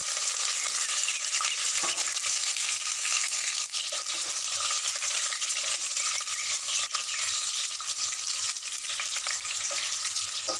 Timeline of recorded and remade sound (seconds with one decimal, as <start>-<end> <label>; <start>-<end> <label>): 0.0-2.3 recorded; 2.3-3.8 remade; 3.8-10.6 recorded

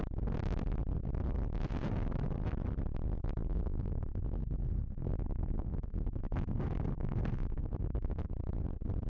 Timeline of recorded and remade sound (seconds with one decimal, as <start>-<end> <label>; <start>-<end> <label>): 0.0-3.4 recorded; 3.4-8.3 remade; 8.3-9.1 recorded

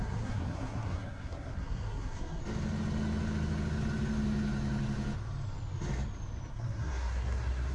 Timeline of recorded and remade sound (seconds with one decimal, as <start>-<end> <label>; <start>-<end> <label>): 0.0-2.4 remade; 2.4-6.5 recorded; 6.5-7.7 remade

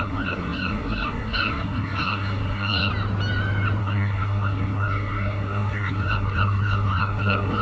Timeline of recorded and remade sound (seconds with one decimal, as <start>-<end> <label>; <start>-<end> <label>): 0.0-2.9 remade; 2.9-3.8 recorded; 3.8-7.6 remade